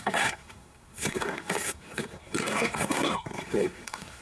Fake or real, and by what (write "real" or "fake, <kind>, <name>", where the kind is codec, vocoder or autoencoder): fake, codec, SNAC